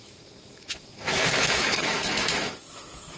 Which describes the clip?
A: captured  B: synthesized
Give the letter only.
B